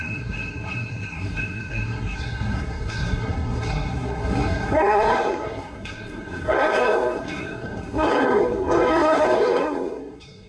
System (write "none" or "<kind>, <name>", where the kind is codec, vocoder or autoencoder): codec, SNAC